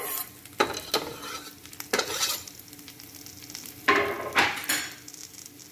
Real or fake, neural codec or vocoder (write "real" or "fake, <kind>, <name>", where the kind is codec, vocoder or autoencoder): real